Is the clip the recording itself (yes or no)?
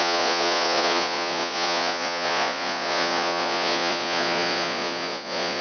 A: no